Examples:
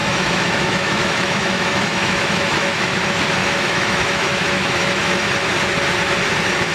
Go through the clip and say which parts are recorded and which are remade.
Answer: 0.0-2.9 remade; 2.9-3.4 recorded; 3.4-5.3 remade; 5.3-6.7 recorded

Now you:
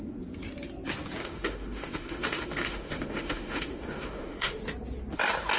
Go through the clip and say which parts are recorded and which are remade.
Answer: 0.0-1.2 recorded; 1.2-4.6 remade; 4.6-5.6 recorded

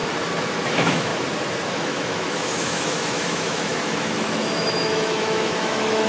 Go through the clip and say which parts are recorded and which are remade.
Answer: 0.0-0.7 recorded; 0.7-1.1 remade; 1.1-1.7 recorded; 1.7-6.1 remade

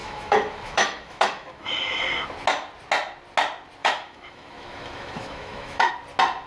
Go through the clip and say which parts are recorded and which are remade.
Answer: 0.0-2.0 remade; 2.0-3.8 recorded; 3.8-5.9 remade; 5.9-6.5 recorded